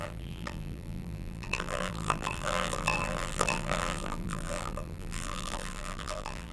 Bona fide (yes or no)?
no